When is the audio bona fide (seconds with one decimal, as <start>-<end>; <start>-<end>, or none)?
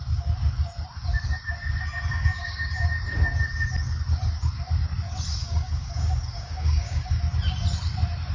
0.0-2.1; 2.9-5.4; 7.2-8.3